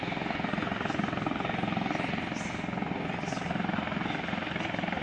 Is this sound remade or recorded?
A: recorded